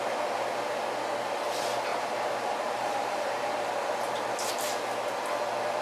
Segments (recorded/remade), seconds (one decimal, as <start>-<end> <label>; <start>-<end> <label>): 0.0-1.9 recorded; 1.9-4.5 remade; 4.5-5.8 recorded